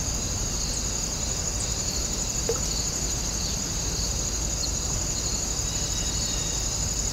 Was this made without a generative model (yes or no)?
yes